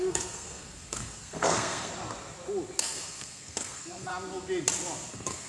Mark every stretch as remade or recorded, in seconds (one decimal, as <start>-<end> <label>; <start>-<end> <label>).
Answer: 0.0-1.9 remade; 1.9-2.8 recorded; 2.8-4.1 remade; 4.1-5.1 recorded; 5.1-5.5 remade